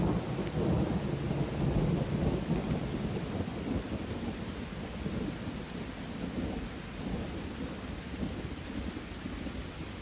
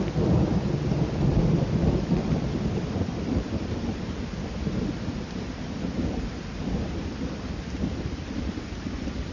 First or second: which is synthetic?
second